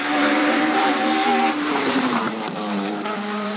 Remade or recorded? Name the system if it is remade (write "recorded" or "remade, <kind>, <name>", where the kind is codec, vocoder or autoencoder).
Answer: remade, vocoder, BigVGAN v2